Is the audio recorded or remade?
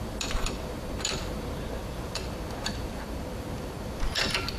remade